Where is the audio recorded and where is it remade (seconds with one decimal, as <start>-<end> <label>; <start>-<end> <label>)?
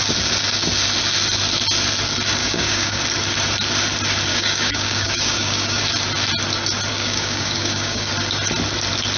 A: 0.0-2.4 recorded; 2.4-3.0 remade; 3.0-4.3 recorded; 4.3-5.8 remade; 5.8-6.9 recorded; 6.9-8.1 remade; 8.1-9.2 recorded